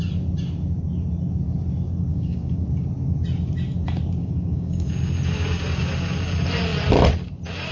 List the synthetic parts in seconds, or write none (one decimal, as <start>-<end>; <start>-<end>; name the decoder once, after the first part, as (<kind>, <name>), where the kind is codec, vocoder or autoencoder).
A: 2.1-2.6 (codec, DAC); 4.2-4.9